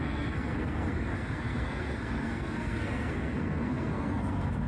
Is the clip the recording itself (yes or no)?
no